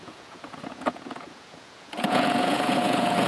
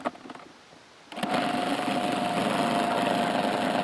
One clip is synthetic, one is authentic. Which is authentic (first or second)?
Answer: second